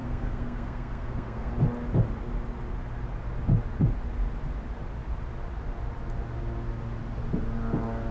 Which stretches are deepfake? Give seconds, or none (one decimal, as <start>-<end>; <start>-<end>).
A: 0.0-1.5